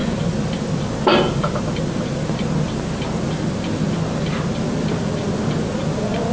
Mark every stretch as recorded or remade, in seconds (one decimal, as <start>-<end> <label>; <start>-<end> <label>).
0.0-6.3 recorded